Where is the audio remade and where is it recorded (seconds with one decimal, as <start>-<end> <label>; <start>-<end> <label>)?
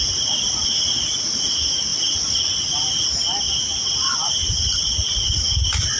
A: 0.0-6.0 recorded